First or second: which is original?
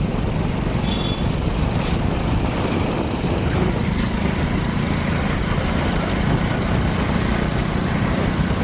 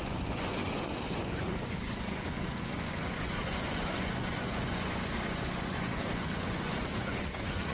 first